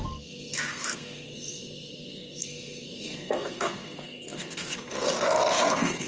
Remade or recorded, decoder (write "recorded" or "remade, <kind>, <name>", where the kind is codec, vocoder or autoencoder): remade, codec, SNAC